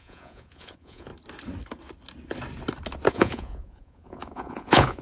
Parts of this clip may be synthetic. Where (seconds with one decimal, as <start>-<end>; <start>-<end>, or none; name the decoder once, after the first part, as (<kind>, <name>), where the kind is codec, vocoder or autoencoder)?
0.0-1.1 (vocoder, Vocos); 3.1-5.0

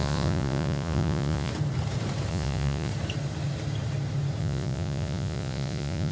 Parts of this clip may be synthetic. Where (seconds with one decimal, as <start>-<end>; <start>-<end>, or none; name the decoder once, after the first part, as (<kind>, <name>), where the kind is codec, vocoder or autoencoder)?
0.0-1.5 (vocoder, Vocos); 2.3-2.9; 4.4-6.1